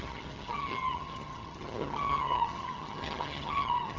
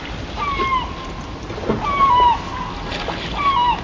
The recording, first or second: second